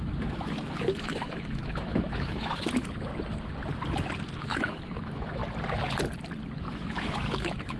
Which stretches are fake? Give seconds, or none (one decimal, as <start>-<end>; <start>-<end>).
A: 0.0-3.1; 4.4-5.4; 6.7-7.8